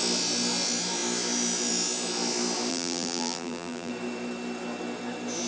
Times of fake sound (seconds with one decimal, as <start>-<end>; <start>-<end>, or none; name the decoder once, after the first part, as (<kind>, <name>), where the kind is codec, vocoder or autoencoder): 2.7-3.9 (vocoder, BigVGAN v2)